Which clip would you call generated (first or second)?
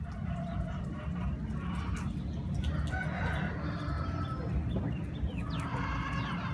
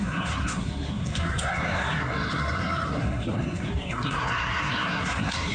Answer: second